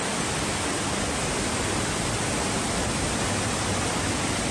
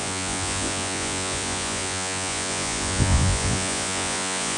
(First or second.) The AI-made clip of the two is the second